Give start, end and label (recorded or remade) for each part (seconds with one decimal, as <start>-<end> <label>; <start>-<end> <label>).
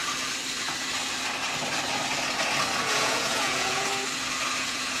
0.0-2.8 recorded; 2.8-3.9 remade; 3.9-4.6 recorded; 4.6-5.0 remade